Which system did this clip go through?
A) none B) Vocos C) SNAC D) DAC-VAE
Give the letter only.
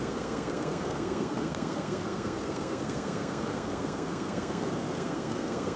C